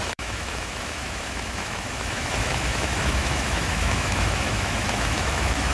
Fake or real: fake